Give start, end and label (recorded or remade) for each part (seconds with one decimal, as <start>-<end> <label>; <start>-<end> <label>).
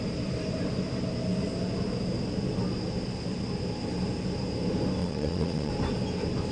0.0-5.0 recorded; 5.0-5.7 remade; 5.7-6.5 recorded